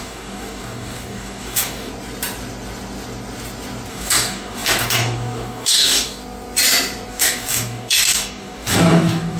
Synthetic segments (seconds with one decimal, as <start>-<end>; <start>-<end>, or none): 0.0-1.9; 3.9-6.2; 7.1-9.4

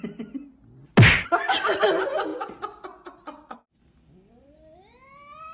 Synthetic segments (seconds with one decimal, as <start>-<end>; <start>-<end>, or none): none

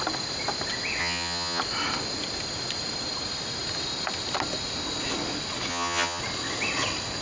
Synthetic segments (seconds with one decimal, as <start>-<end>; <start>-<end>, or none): 1.0-1.6; 5.7-6.2

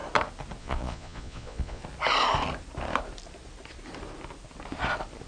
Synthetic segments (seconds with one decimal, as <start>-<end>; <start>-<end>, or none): 0.6-1.8

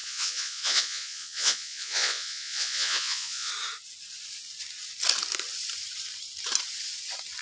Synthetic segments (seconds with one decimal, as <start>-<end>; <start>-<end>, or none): 0.0-3.5

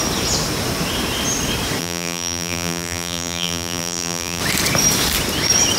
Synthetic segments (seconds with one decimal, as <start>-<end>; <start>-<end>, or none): 1.8-4.4